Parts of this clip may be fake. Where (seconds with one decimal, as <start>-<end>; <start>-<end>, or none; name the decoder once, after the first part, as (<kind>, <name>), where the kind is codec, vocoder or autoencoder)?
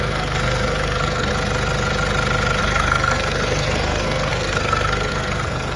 0.0-1.3 (codec, SNAC); 2.6-5.8